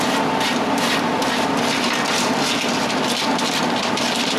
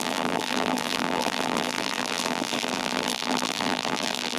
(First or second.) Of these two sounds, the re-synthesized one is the second